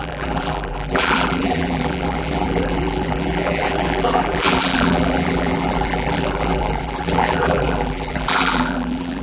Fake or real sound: fake